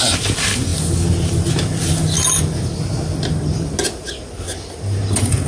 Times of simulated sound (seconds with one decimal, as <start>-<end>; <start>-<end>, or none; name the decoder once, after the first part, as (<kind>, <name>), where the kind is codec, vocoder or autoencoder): none